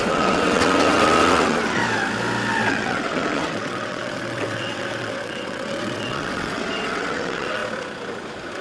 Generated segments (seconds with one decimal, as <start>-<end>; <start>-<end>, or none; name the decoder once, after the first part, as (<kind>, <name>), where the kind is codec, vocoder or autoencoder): 0.0-1.8 (vocoder, WaveNeXt); 2.7-7.6